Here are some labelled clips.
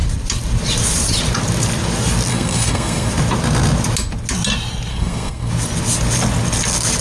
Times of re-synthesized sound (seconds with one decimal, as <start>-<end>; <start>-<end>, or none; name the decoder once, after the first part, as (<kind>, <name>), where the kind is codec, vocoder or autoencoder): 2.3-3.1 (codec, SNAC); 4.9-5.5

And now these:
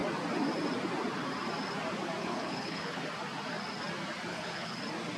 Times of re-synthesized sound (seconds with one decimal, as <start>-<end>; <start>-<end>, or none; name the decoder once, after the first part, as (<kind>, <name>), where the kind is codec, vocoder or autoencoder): 2.2-3.0 (codec, HILCodec); 4.3-4.8

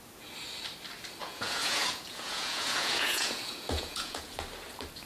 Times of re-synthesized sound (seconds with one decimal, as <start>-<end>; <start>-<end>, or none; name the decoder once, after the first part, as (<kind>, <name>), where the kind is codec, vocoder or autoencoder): 1.2-4.3 (vocoder, Vocos)

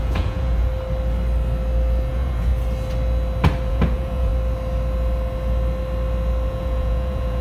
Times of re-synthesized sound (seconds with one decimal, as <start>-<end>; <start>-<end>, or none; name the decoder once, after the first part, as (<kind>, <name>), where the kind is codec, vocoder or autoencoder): 0.0-0.7 (vocoder, Vocos); 2.1-2.5; 3.7-4.3; 6.5-7.4

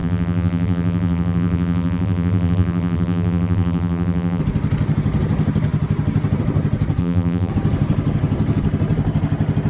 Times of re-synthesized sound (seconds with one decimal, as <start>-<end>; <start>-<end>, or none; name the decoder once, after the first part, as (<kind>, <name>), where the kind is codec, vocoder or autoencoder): 0.0-4.4 (vocoder, BigVGAN v2); 7.0-7.5

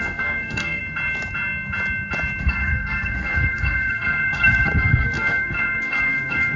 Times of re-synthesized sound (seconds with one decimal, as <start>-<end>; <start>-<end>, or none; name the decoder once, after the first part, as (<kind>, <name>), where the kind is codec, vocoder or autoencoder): 0.0-0.8 (codec, SNAC); 2.4-6.6

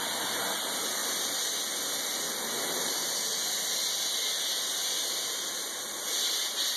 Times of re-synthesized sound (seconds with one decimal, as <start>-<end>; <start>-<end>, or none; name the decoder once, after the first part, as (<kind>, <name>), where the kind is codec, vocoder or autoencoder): none